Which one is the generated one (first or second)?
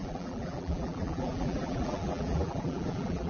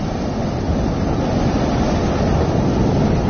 first